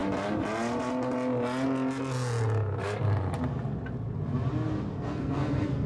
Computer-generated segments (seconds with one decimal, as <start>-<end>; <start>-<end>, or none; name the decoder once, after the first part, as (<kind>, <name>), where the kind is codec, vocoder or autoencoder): 4.9-5.9 (codec, SNAC)